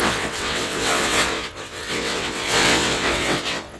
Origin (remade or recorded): remade